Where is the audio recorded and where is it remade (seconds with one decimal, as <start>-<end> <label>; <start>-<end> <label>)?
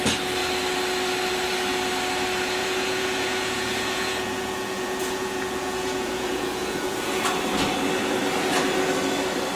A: 0.0-2.6 recorded; 2.6-7.4 remade; 7.4-9.6 recorded